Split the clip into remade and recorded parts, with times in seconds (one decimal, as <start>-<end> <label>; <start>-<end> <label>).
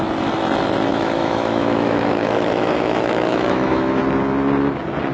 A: 0.0-0.9 recorded; 0.9-4.0 remade; 4.0-5.1 recorded